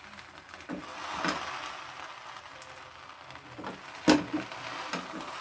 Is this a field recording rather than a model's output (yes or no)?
yes